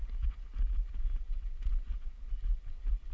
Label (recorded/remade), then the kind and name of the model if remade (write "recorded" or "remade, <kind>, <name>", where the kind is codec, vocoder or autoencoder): recorded